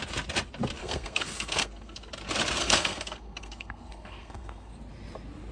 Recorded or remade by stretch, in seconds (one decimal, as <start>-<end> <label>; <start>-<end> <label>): 0.0-0.8 recorded; 0.8-2.1 remade; 2.1-2.6 recorded; 2.6-4.7 remade; 4.7-5.5 recorded